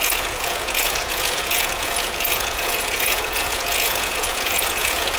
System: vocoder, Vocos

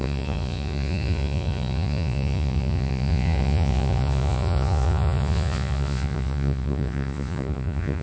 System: vocoder, Vocos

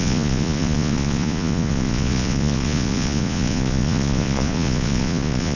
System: vocoder, Vocos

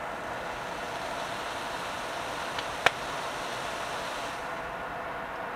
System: none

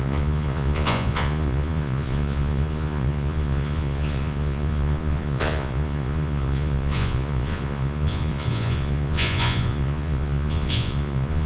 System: vocoder, Vocos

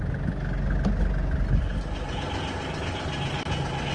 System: none